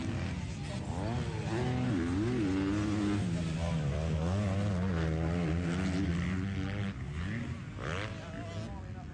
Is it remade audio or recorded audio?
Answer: recorded